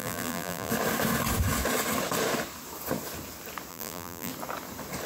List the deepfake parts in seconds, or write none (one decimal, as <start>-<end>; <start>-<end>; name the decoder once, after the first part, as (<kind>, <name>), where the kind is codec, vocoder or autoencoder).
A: 0.0-0.7 (vocoder, BigVGAN v2); 3.7-4.3